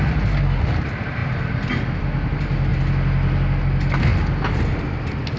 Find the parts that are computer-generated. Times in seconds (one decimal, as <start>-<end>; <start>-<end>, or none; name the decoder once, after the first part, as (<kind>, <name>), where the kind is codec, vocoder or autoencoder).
none